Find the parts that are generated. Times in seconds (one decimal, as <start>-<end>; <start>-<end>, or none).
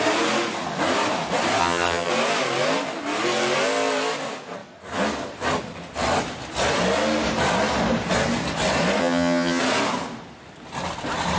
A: 1.6-2.1; 9.0-9.6